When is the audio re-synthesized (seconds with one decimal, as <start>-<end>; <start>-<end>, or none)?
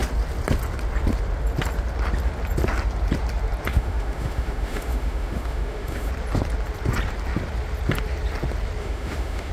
3.7-6.1; 8.8-9.5